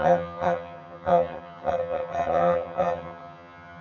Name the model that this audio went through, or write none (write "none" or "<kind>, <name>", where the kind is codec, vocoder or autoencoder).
vocoder, HiFi-GAN